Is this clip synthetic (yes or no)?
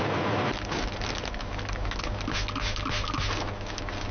no